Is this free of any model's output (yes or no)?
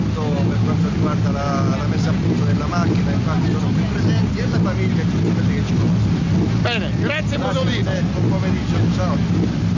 yes